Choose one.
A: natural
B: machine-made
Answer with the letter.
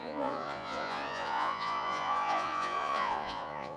B